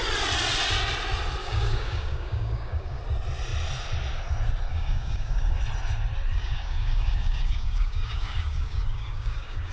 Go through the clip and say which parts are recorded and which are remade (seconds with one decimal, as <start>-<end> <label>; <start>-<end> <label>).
0.0-1.4 recorded; 1.4-3.0 remade; 3.0-4.7 recorded; 4.7-5.6 remade; 5.6-6.3 recorded; 6.3-9.7 remade

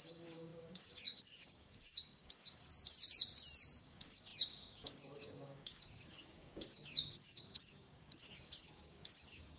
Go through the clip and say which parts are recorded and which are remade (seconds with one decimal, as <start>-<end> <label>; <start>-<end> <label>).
0.0-2.7 remade; 2.7-3.8 recorded; 3.8-9.6 remade

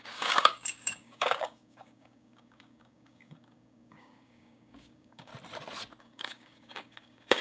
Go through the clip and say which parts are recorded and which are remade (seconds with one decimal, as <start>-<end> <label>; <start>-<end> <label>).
0.0-5.3 remade; 5.3-6.0 recorded; 6.0-7.4 remade

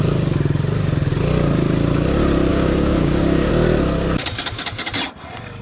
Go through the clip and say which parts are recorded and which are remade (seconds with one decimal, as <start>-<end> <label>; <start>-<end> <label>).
0.0-2.5 recorded; 2.5-3.5 remade; 3.5-5.6 recorded

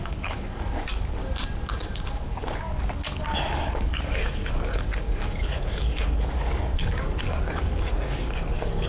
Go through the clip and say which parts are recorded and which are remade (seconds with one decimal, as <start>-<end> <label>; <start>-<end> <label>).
0.0-1.2 remade; 1.2-1.8 recorded; 1.8-8.9 remade

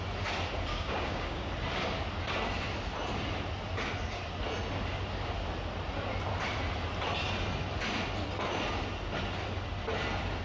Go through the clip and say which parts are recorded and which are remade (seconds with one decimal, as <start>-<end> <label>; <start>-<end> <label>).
0.0-0.7 recorded; 0.7-1.5 remade; 1.5-10.4 recorded

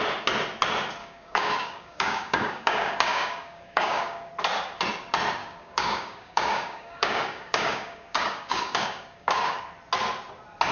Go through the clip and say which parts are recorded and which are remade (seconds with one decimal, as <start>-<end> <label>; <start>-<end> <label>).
0.0-1.0 recorded; 1.0-4.3 remade; 4.3-5.4 recorded; 5.4-9.6 remade; 9.6-10.7 recorded